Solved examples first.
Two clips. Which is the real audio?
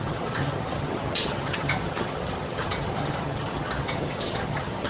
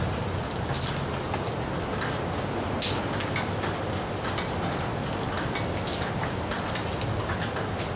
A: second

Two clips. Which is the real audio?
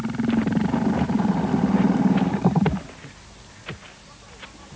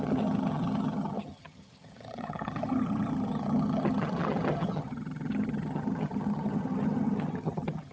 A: first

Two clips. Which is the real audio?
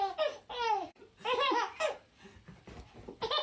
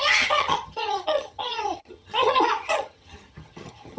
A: first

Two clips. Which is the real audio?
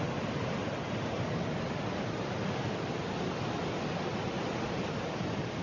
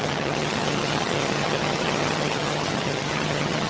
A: first